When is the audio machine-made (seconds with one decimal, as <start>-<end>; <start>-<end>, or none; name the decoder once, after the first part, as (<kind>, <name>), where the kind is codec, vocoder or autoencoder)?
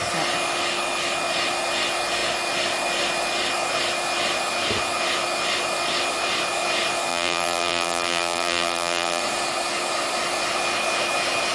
7.1-9.2 (vocoder, BigVGAN v2)